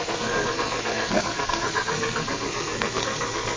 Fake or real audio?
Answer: fake